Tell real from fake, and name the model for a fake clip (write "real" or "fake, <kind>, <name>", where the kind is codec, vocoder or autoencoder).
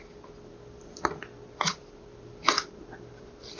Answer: real